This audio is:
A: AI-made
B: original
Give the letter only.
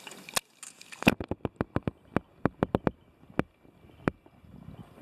B